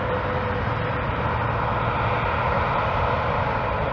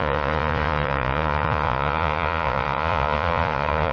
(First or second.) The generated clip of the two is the second